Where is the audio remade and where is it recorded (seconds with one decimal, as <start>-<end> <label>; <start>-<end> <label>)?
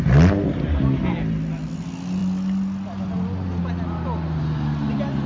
0.0-5.3 recorded